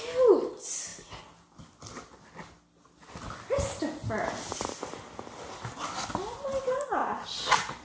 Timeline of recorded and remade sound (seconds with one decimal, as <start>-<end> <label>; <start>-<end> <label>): 0.0-7.8 recorded